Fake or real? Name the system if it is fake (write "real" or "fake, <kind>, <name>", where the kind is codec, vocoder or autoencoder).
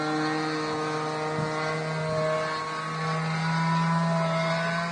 real